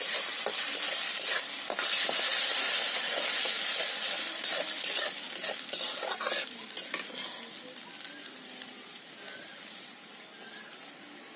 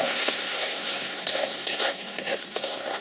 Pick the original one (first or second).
first